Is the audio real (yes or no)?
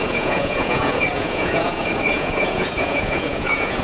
no